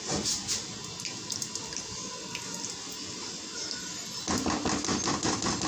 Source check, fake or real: real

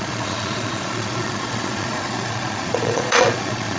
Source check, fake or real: fake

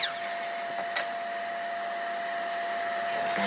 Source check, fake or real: real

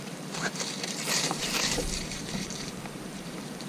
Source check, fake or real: fake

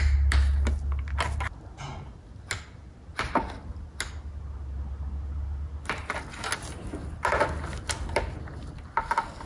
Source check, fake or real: real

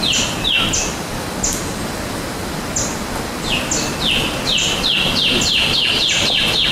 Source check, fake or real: real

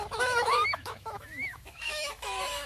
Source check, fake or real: fake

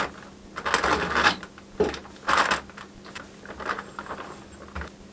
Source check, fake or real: real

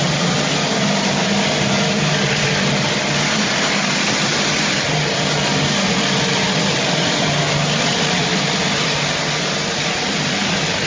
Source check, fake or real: real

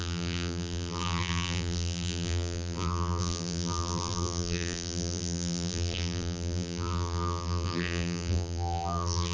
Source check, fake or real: fake